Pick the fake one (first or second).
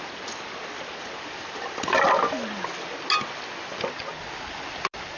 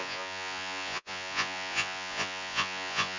second